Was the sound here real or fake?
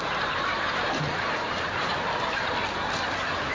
real